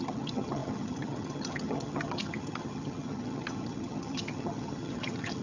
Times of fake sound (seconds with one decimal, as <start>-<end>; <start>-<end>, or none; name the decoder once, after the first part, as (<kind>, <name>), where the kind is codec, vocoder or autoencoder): 0.0-5.4 (vocoder, HiFi-GAN)